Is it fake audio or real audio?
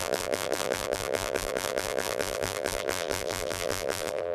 fake